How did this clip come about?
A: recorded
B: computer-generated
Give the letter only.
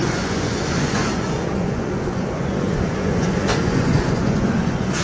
B